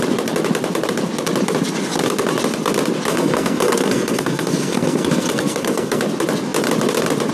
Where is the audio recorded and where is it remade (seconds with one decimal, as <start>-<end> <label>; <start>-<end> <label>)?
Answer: 0.0-3.1 recorded; 3.1-6.0 remade; 6.0-7.3 recorded